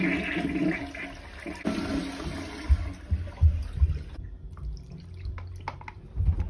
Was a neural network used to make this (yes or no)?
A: no